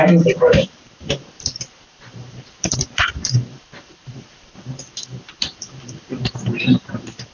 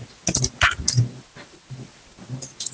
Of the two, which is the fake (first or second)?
first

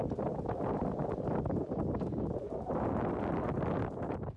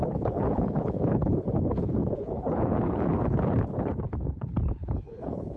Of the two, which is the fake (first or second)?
second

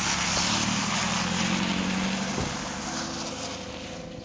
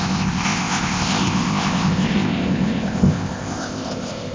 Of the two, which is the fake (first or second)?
second